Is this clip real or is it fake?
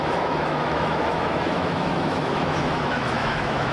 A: fake